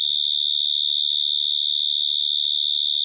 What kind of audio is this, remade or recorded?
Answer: recorded